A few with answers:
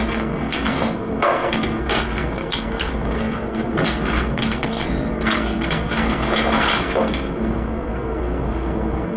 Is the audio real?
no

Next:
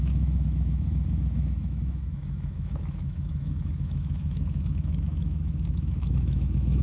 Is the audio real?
no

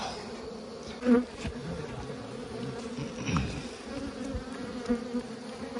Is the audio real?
yes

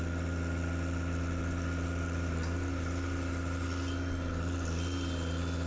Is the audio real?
yes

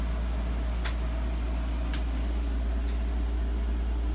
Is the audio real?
yes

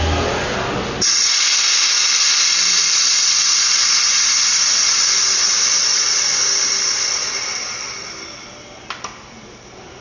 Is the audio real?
yes